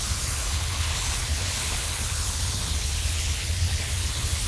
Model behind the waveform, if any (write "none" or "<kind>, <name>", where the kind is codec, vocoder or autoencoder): codec, HILCodec